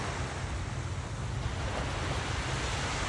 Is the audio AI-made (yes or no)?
no